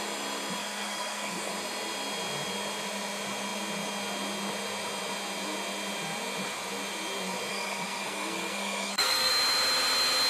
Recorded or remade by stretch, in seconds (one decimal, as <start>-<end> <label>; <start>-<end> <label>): 0.0-0.6 recorded; 0.6-1.5 remade; 1.5-7.5 recorded; 7.5-9.3 remade; 9.3-10.3 recorded